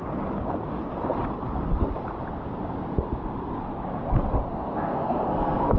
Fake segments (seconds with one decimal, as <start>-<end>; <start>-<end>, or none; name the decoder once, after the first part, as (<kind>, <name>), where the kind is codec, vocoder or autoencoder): 4.5-5.8 (codec, SNAC)